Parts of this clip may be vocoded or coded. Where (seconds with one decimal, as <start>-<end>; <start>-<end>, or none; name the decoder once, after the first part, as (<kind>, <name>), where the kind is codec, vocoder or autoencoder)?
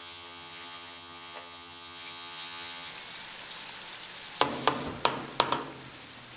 0.0-2.9 (vocoder, HiFi-GAN)